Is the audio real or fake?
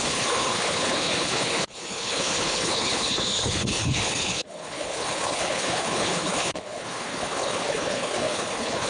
fake